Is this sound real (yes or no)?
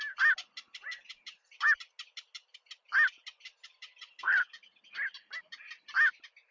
yes